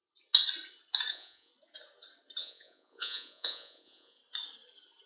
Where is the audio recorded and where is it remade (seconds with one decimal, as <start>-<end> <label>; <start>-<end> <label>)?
0.0-1.1 recorded; 1.1-1.5 remade; 1.5-2.4 recorded; 2.4-4.2 remade; 4.2-5.1 recorded